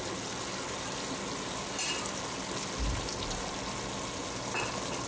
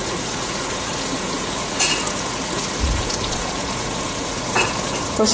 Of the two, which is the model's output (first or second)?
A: second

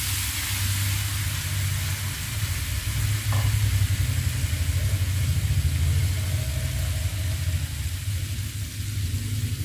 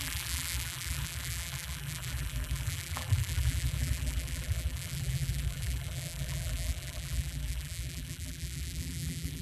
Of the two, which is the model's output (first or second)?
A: second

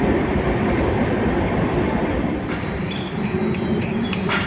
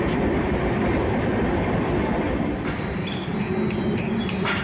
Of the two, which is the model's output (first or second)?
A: first